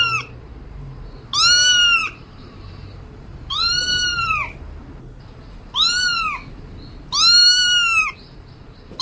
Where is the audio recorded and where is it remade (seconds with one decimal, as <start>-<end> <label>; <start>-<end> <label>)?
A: 0.0-2.0 recorded; 2.0-4.6 remade; 4.6-9.0 recorded